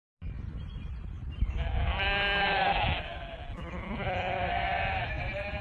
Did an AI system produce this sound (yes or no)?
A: no